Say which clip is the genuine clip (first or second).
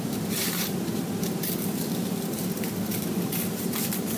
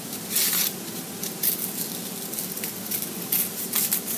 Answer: second